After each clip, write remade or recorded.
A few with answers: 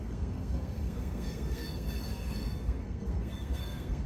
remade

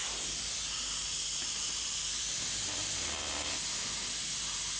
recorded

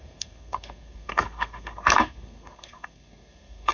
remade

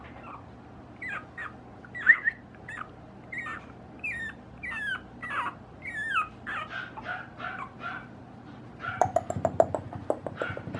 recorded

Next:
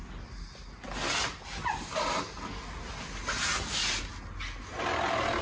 recorded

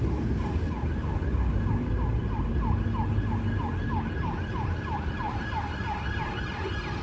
recorded